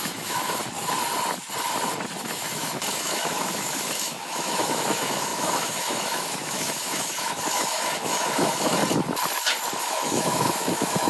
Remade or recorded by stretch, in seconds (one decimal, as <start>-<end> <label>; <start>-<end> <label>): 0.0-0.6 remade; 0.6-2.2 recorded; 2.2-8.8 remade; 8.8-9.8 recorded; 9.8-11.1 remade